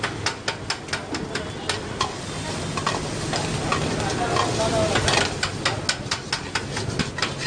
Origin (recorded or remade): recorded